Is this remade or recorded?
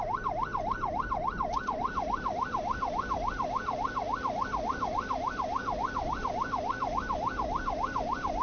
recorded